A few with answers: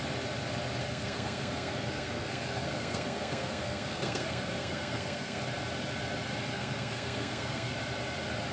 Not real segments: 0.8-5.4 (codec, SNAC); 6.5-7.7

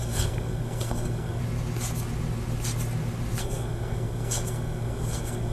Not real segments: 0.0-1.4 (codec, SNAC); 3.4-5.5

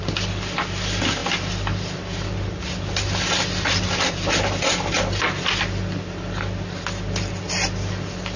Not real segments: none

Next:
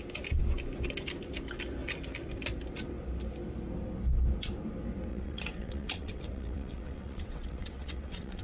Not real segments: 5.1-8.4 (vocoder, WaveNeXt)

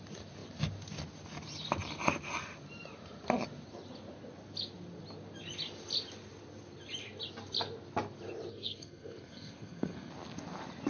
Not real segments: 8.5-10.1 (codec, SNAC)

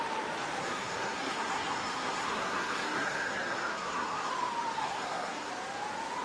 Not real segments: 0.6-4.3 (codec, SNAC); 4.8-5.5